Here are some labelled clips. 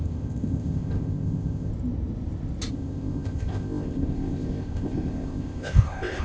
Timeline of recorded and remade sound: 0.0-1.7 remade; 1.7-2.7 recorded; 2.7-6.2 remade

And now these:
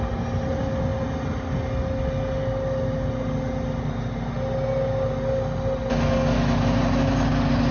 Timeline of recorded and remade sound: 0.0-7.7 recorded

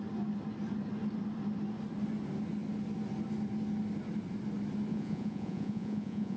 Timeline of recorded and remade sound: 0.0-4.9 recorded; 4.9-6.4 remade

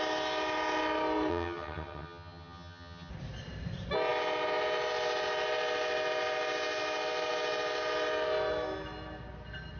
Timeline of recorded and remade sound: 0.0-1.3 recorded; 1.3-3.1 remade; 3.1-9.8 recorded

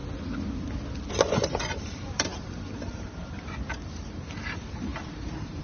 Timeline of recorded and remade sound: 0.0-1.1 recorded; 1.1-5.6 remade

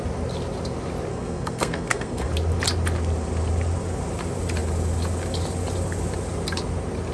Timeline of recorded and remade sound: 0.0-1.1 recorded; 1.1-2.3 remade; 2.3-7.1 recorded

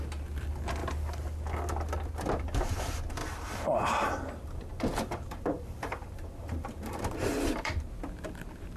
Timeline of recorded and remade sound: 0.0-3.2 recorded; 3.2-7.9 remade; 7.9-8.8 recorded

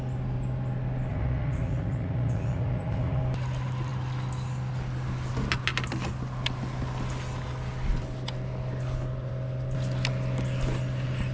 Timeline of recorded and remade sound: 0.0-1.1 recorded; 1.1-3.2 remade; 3.2-11.3 recorded